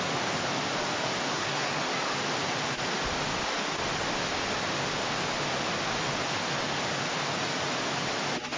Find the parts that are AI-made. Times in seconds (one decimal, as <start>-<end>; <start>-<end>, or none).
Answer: 1.3-1.8